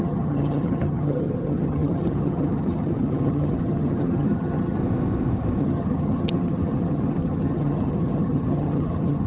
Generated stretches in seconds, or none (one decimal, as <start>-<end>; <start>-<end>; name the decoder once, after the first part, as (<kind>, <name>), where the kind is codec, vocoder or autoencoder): 0.0-4.8 (vocoder, HiFi-GAN); 5.6-9.3